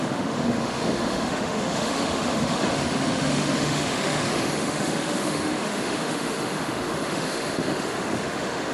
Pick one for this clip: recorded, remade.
remade